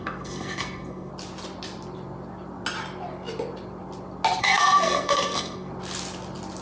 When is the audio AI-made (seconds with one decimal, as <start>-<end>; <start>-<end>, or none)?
0.0-1.1; 4.4-5.7